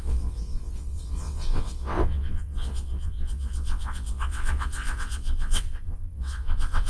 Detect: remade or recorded remade